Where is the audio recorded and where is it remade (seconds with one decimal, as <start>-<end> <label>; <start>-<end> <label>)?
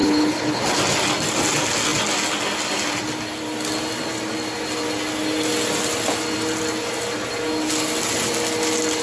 0.0-0.6 remade; 0.6-9.0 recorded